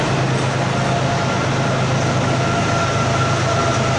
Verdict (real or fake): real